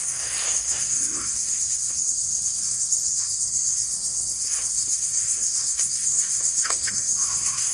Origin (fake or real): fake